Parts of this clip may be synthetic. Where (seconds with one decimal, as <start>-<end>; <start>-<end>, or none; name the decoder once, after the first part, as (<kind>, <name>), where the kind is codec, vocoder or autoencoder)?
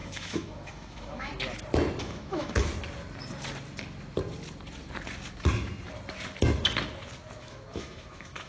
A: 0.0-1.3 (autoencoder, DAC-VAE); 2.0-2.7; 7.4-8.5